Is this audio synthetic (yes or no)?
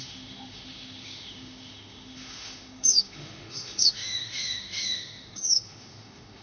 yes